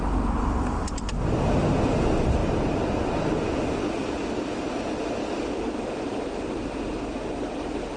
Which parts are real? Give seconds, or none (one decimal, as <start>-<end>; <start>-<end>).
0.0-2.4; 3.0-5.2; 6.7-8.0